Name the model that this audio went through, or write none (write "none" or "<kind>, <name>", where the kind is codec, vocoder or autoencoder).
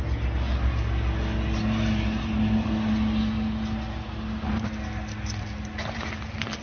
none